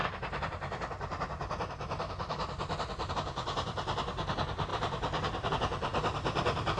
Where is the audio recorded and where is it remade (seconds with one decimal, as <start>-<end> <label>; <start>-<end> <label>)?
0.0-6.8 remade